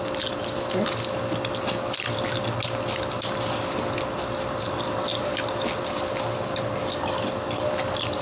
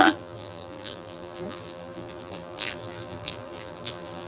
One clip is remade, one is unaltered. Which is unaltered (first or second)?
first